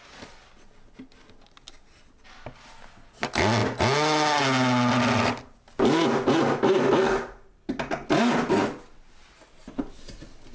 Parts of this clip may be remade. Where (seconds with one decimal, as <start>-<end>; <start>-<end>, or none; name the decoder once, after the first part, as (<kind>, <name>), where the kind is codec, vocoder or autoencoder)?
none

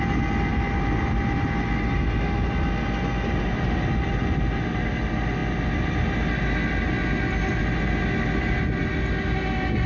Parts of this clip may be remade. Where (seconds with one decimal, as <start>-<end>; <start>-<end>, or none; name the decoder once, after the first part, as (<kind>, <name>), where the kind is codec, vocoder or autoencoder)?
none

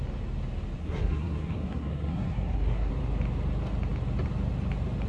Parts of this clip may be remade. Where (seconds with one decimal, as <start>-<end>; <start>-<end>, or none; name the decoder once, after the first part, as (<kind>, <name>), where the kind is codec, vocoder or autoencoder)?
0.8-2.9 (codec, SNAC)